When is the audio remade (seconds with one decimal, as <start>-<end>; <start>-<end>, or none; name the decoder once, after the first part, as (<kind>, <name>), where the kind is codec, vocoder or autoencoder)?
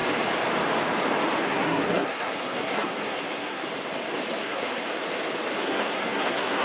1.4-3.7 (codec, SNAC); 4.3-4.8; 5.6-6.6